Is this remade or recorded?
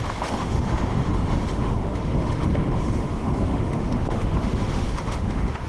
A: remade